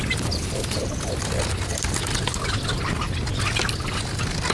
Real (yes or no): yes